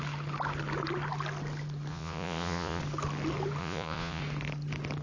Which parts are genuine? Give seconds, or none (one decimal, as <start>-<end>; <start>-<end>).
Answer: 0.0-1.9; 2.8-3.6; 4.2-5.0